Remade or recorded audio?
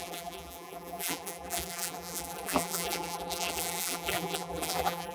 remade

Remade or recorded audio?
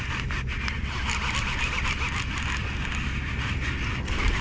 recorded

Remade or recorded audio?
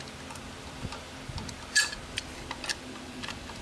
recorded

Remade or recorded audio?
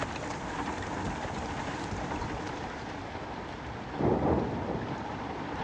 remade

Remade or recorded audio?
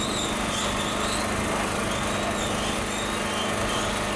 recorded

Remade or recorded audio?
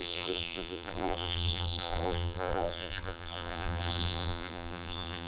remade